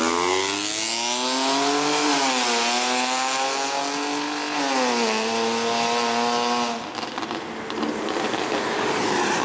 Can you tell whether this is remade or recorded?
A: recorded